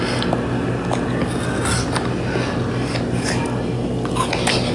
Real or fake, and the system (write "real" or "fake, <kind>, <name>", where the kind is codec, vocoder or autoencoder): real